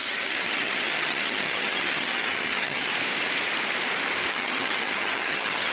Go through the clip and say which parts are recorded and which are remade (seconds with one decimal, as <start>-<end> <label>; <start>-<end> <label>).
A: 0.0-2.9 remade; 2.9-4.3 recorded; 4.3-5.7 remade